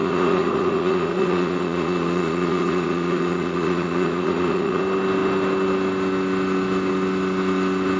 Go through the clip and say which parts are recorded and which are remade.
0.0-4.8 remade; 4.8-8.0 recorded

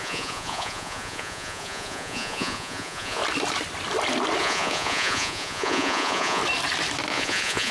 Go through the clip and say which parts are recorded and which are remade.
0.0-3.2 remade; 3.2-4.4 recorded; 4.4-6.4 remade; 6.4-7.1 recorded; 7.1-7.7 remade

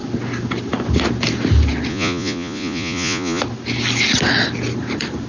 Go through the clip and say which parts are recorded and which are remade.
0.0-1.9 recorded; 1.9-3.4 remade; 3.4-5.3 recorded

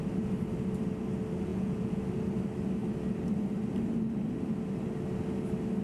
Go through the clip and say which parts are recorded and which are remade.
0.0-1.5 recorded; 1.5-2.0 remade; 2.0-5.8 recorded

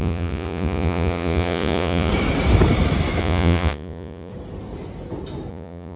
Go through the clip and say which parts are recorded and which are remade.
0.0-2.1 remade; 2.1-3.2 recorded; 3.2-4.3 remade; 4.3-5.5 recorded; 5.5-6.0 remade

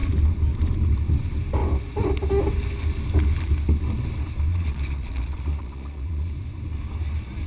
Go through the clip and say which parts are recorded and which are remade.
0.0-4.5 recorded; 4.5-6.3 remade; 6.3-7.5 recorded